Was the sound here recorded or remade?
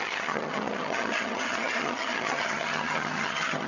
remade